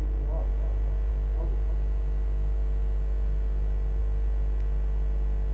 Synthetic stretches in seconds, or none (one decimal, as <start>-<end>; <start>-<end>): none